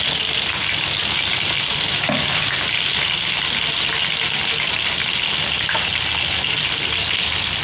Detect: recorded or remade recorded